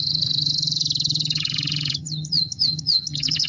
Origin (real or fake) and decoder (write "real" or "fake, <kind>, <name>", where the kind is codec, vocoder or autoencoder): fake, vocoder, HiFi-GAN